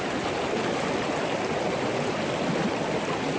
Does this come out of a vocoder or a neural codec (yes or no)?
no